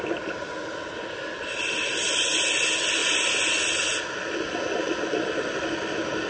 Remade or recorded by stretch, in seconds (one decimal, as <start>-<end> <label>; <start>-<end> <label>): 0.0-6.3 recorded